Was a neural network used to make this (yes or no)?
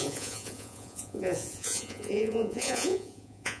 yes